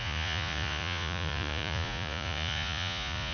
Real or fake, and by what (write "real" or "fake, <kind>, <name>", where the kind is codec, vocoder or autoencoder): fake, vocoder, Vocos